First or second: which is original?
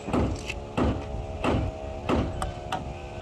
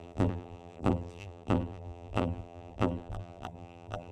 first